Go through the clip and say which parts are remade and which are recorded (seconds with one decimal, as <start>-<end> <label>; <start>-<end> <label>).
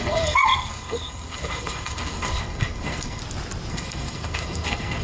0.0-3.2 remade; 3.2-3.7 recorded; 3.7-5.0 remade